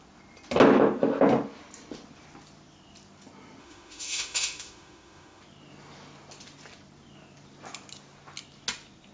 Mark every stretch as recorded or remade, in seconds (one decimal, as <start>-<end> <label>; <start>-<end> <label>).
0.0-3.6 recorded; 3.6-5.4 remade; 5.4-9.1 recorded